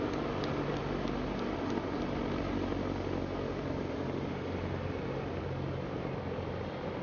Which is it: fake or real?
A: real